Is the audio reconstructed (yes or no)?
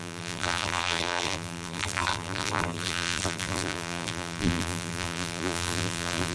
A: yes